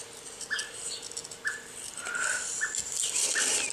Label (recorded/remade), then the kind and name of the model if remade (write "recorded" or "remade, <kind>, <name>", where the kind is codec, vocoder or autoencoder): recorded